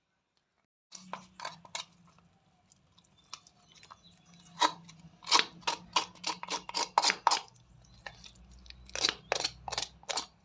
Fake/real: real